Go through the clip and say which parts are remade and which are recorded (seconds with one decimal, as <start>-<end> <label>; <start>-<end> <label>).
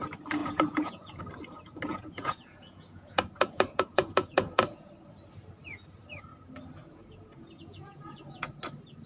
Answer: 0.0-0.4 recorded; 0.4-1.2 remade; 1.2-1.9 recorded; 1.9-4.9 remade; 4.9-6.8 recorded; 6.8-8.6 remade; 8.6-9.1 recorded